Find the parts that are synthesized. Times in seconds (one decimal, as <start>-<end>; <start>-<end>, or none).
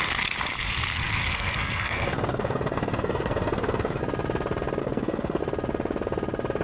1.2-4.0; 4.8-5.4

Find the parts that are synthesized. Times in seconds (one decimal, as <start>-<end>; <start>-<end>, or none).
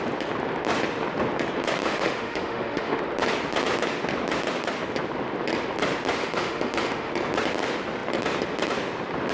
1.8-3.0; 6.2-7.1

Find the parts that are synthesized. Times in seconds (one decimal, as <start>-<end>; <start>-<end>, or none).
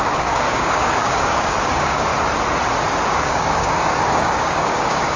0.0-2.1; 3.1-5.2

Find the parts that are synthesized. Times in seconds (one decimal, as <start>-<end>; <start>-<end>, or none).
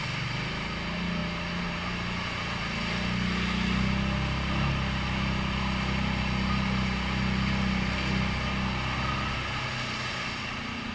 none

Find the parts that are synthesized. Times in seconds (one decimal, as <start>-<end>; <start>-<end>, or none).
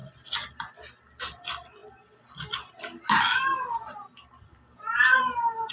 0.0-5.7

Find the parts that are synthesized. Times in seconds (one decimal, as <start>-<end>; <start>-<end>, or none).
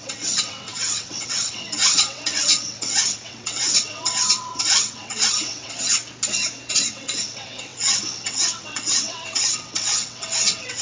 0.0-6.0; 6.7-10.8